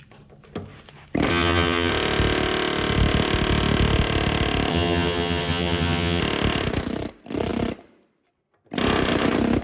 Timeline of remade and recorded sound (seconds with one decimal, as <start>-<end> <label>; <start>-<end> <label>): 0.0-1.3 recorded; 1.3-1.9 remade; 1.9-4.7 recorded; 4.7-6.2 remade; 6.2-9.6 recorded